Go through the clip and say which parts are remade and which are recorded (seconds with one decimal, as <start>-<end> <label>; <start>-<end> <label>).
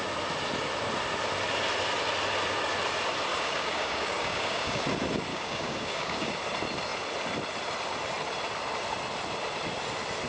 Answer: 0.0-3.3 recorded; 3.3-4.8 remade; 4.8-5.3 recorded; 5.3-6.3 remade; 6.3-10.3 recorded